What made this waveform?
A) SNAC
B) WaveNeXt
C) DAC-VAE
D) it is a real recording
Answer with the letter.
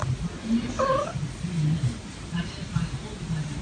D